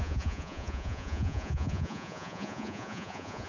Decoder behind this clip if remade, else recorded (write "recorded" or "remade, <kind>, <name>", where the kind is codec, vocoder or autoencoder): remade, vocoder, Vocos